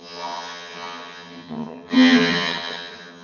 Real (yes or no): no